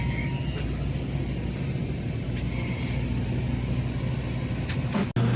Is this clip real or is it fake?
real